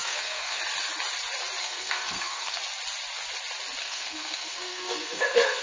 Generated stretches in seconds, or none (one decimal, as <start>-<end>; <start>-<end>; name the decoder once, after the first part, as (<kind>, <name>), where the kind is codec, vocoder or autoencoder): 0.0-0.6 (codec, SNAC); 1.6-2.6; 3.8-5.6